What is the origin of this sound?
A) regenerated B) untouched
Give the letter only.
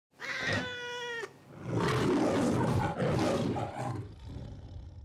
B